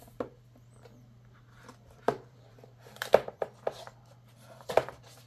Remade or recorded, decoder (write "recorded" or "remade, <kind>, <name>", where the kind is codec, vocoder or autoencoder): remade, vocoder, BigVGAN v2